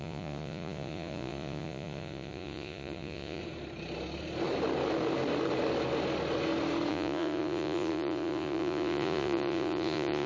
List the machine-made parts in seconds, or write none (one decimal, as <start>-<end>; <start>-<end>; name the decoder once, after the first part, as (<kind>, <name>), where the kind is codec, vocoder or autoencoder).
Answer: 0.0-3.4 (vocoder, Vocos); 6.9-10.3